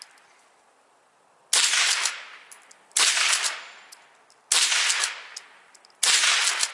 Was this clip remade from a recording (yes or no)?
no